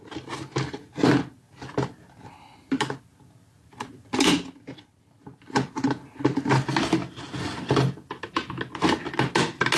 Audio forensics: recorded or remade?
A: recorded